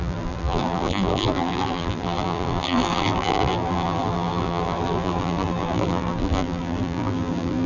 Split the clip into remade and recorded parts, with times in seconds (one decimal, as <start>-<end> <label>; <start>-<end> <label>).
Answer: 0.0-7.7 remade